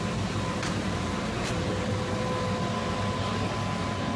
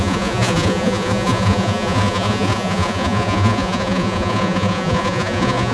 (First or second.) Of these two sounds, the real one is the first